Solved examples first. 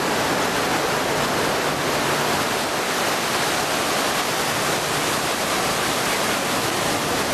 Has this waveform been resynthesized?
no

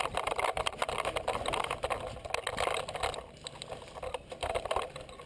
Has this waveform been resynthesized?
no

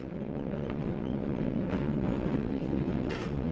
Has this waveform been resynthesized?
yes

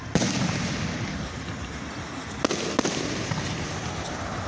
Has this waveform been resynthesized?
no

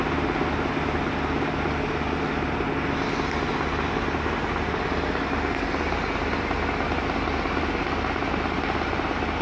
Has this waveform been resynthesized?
no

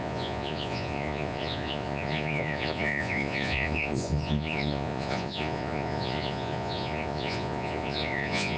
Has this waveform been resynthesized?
yes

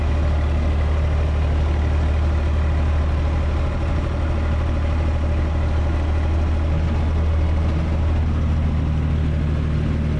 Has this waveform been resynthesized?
no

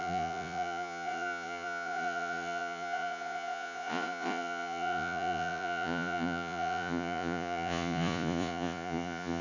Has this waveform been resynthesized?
yes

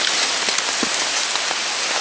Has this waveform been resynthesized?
no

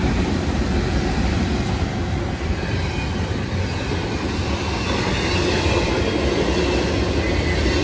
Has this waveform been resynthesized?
no